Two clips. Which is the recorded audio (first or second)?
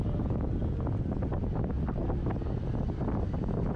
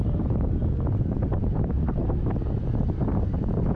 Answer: first